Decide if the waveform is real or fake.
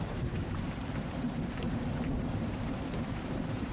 fake